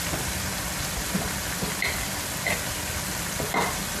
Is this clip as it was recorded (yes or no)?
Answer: yes